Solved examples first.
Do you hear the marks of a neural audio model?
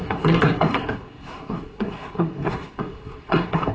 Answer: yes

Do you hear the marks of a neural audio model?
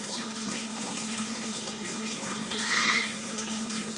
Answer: yes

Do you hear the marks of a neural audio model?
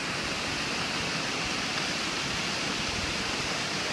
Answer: no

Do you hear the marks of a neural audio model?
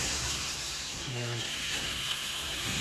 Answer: yes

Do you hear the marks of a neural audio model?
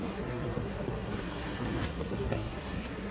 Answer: yes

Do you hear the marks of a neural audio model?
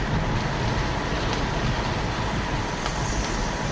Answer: no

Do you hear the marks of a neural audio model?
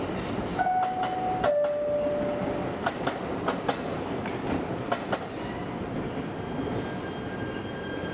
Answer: no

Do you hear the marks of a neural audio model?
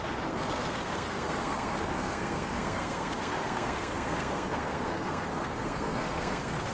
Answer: yes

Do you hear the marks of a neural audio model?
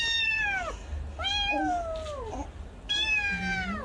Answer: no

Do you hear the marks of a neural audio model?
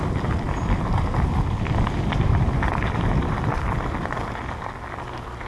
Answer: no